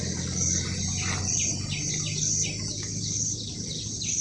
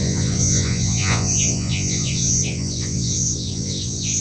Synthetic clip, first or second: second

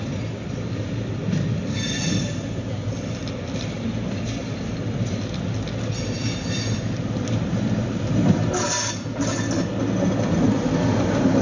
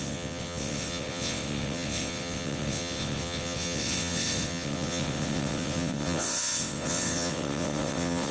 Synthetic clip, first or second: second